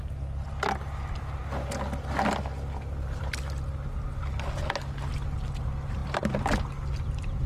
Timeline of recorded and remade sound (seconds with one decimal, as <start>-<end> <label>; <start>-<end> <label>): 0.0-7.5 recorded